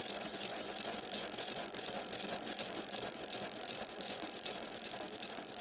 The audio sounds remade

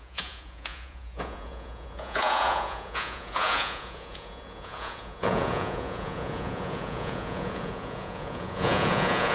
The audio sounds remade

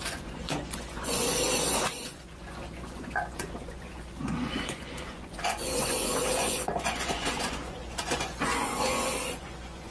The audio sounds remade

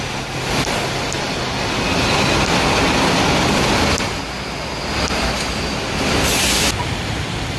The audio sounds recorded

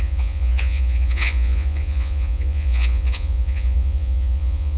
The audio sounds remade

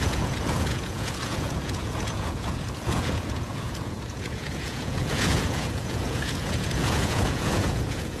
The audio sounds remade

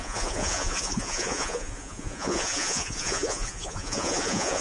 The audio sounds remade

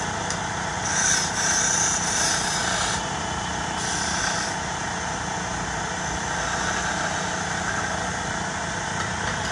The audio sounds recorded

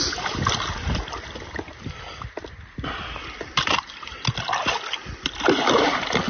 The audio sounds recorded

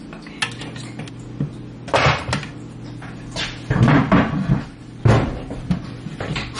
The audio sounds recorded